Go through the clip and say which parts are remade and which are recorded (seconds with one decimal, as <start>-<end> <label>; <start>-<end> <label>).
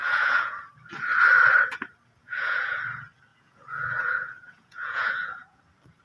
0.0-0.6 remade; 0.6-2.2 recorded; 2.2-2.8 remade; 2.8-3.3 recorded; 3.3-5.6 remade; 5.6-6.0 recorded